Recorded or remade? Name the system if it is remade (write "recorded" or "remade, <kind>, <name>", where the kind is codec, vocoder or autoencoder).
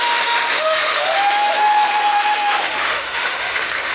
remade, autoencoder, DAC-VAE